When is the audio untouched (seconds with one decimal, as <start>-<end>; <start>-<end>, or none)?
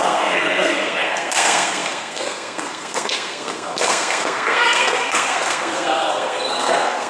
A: none